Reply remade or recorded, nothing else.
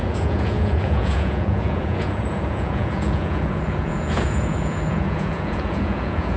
remade